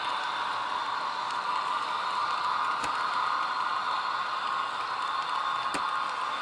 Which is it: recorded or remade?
recorded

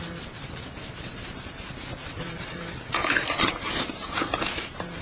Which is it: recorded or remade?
remade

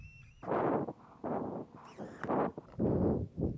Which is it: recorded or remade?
recorded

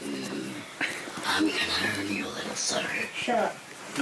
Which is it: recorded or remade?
recorded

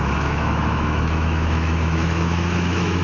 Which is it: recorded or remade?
remade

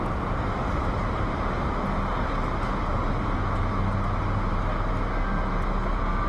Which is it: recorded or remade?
recorded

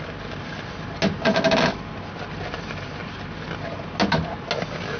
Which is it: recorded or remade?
recorded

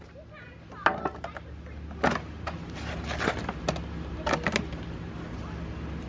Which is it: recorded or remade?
recorded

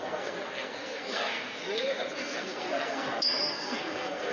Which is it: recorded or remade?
remade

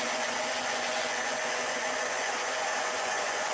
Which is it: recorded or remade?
remade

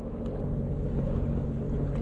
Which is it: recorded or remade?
recorded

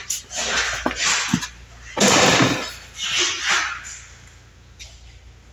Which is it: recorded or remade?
recorded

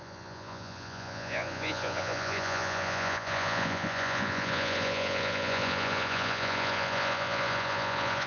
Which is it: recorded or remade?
remade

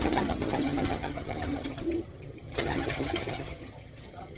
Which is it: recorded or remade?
remade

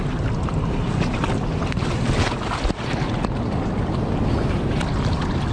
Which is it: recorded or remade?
recorded